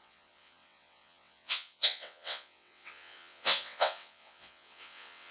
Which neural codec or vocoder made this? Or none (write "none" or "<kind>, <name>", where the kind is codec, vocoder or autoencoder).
vocoder, WaveNeXt